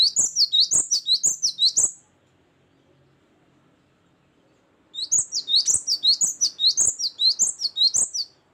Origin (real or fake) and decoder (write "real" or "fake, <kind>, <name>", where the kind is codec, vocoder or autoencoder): real